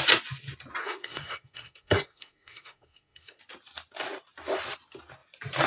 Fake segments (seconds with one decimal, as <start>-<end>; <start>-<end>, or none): 0.8-3.4